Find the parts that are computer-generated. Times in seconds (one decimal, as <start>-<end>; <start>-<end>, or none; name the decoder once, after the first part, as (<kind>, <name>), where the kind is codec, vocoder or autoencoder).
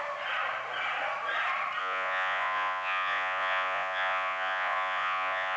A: 1.8-5.6 (vocoder, Vocos)